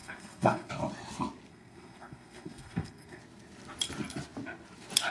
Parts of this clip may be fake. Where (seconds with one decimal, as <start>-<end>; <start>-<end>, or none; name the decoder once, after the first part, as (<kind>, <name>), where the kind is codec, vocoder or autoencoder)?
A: 0.0-0.7 (codec, SNAC); 1.5-3.2